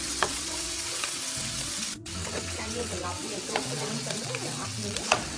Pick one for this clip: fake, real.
fake